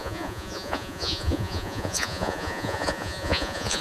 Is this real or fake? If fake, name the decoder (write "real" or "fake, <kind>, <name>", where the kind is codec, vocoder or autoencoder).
fake, vocoder, Vocos